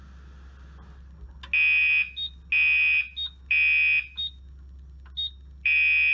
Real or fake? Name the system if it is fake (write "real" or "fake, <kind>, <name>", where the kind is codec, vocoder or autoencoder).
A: real